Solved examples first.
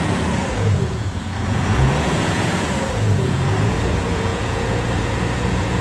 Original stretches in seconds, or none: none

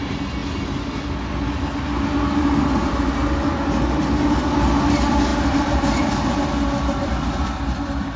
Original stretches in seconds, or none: 0.0-5.3; 6.0-7.0

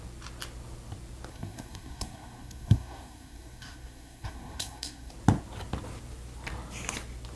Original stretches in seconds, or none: 0.0-1.3; 5.1-7.4

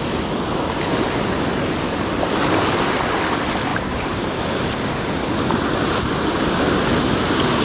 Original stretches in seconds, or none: 0.0-3.7; 4.4-7.6

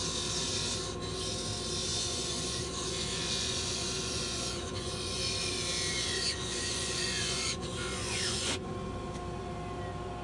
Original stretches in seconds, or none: 0.0-1.9; 5.3-5.9; 8.7-10.2

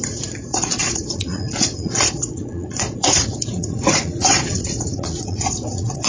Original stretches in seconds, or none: none

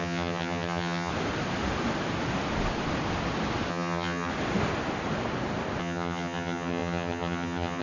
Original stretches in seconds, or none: 1.1-3.7; 4.3-5.8